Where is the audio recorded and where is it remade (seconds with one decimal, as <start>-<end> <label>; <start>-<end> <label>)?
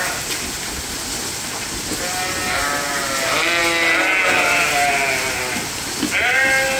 0.0-6.8 recorded